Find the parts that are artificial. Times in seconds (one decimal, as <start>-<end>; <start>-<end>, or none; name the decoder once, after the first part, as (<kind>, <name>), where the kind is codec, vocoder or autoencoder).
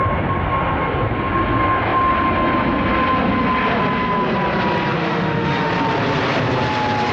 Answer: 5.0-5.7 (autoencoder, DAC-VAE)